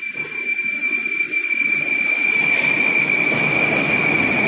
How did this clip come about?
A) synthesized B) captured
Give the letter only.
B